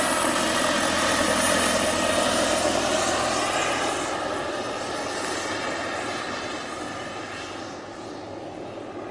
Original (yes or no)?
yes